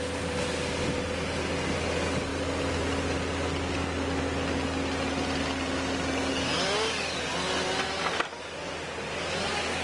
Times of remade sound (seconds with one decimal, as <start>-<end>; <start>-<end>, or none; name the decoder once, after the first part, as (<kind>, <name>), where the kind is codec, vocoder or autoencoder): none